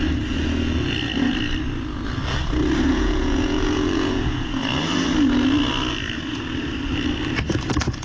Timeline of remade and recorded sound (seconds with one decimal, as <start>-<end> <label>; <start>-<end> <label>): 0.0-2.9 recorded; 2.9-4.6 remade; 4.6-8.0 recorded